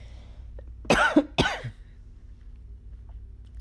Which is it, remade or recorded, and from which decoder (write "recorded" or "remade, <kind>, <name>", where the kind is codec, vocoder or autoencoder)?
recorded